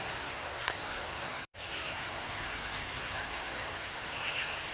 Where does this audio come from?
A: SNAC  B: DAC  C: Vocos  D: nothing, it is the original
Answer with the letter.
A